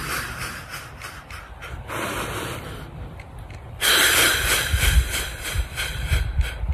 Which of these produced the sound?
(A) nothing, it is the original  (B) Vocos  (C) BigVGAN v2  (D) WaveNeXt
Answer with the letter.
C